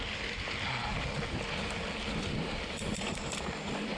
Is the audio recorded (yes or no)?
yes